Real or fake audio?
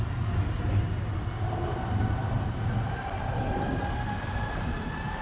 real